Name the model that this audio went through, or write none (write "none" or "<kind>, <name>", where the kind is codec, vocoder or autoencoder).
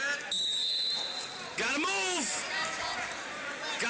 none